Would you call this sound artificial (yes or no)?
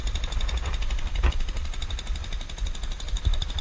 no